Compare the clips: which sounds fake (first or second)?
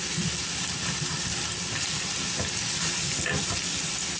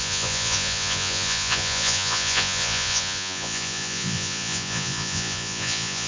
second